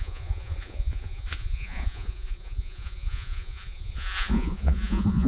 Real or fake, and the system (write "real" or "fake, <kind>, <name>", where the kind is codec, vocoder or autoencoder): fake, vocoder, Vocos